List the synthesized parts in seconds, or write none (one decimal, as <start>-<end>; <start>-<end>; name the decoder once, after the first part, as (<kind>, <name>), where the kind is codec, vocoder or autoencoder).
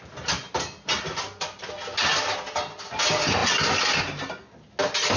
none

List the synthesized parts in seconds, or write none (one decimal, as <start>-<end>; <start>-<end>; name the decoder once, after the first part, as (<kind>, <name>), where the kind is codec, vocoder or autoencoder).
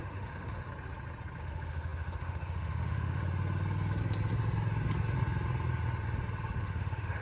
0.0-0.7 (autoencoder, DAC-VAE); 1.4-3.2; 6.6-7.2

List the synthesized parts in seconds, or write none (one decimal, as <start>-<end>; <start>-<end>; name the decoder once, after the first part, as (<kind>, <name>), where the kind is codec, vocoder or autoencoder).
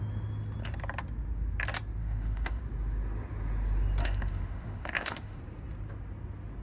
2.0-2.6 (autoencoder, DAC-VAE); 4.0-5.4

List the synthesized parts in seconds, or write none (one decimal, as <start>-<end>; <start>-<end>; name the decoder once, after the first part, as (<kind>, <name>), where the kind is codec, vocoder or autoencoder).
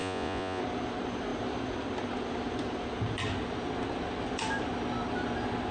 0.0-0.6 (vocoder, Vocos)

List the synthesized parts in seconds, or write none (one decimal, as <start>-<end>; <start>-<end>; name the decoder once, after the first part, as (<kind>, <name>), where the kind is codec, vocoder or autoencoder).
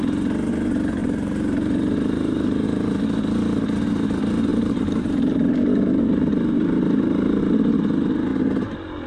1.0-3.0 (vocoder, BigVGAN v2); 4.5-7.4